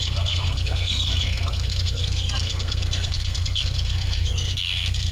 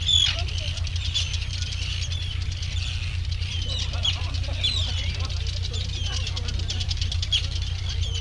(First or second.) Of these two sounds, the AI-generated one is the first